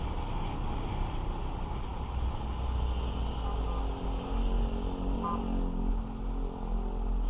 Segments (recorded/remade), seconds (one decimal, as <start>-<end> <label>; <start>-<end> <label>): 0.0-7.3 recorded